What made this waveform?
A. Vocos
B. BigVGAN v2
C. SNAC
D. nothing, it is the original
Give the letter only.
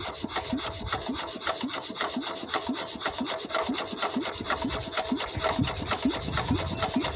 D